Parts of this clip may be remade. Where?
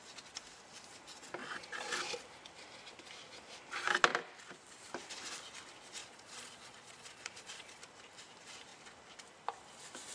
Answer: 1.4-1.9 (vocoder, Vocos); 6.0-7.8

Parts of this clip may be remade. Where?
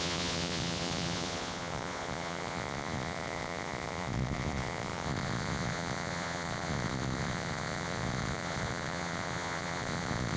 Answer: 0.0-10.4 (vocoder, Vocos)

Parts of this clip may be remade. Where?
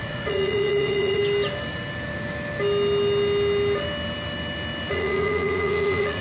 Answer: 0.0-1.2 (vocoder, Vocos); 4.9-6.2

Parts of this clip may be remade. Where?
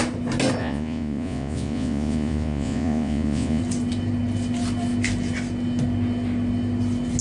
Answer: 0.6-3.6 (vocoder, Vocos)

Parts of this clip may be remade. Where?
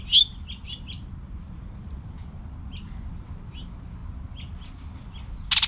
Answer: none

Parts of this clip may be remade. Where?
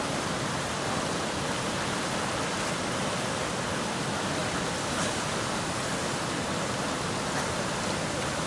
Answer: none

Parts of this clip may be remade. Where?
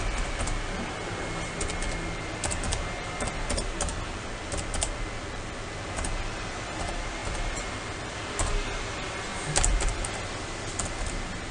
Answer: none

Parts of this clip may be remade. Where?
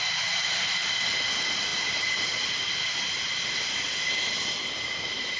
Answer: none